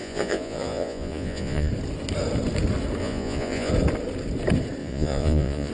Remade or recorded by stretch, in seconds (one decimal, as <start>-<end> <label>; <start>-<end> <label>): 0.0-1.7 remade; 1.7-3.0 recorded; 3.0-3.7 remade; 3.7-4.8 recorded; 4.8-5.7 remade

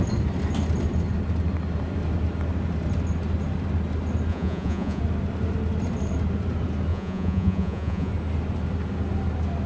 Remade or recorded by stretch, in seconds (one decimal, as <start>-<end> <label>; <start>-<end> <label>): 0.0-4.3 recorded; 4.3-5.0 remade; 5.0-6.9 recorded; 6.9-8.1 remade; 8.1-9.7 recorded

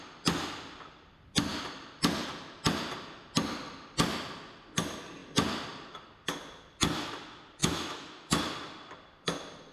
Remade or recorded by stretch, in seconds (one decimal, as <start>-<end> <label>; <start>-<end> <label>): 0.0-7.6 recorded; 7.6-8.4 remade; 8.4-9.7 recorded